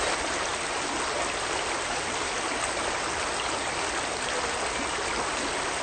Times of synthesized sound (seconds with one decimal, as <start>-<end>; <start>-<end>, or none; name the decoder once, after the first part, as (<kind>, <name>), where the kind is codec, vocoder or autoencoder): 0.5-2.3 (vocoder, BigVGAN v2)